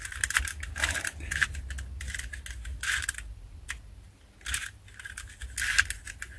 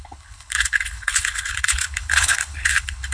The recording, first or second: first